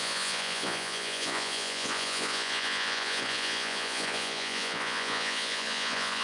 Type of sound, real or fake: fake